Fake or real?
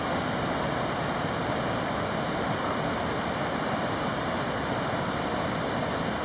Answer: real